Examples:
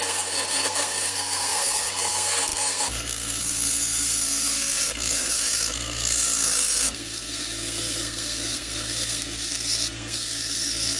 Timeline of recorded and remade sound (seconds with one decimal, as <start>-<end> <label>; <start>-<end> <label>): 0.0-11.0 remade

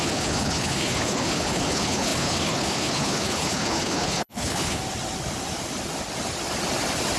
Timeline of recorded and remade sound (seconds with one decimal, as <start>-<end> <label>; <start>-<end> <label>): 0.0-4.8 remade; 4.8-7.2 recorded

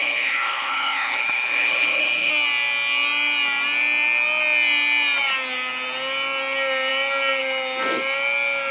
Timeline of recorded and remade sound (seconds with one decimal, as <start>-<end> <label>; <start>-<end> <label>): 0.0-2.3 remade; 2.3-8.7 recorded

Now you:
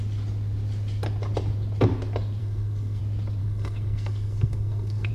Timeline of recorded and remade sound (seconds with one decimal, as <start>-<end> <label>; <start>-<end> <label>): 0.0-2.4 recorded; 2.4-3.0 remade; 3.0-3.4 recorded; 3.4-5.1 remade